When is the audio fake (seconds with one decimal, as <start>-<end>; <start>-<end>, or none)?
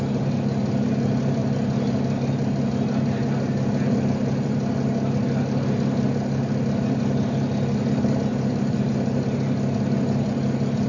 8.3-8.8